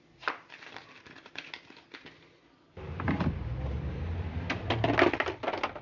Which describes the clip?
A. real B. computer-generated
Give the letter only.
A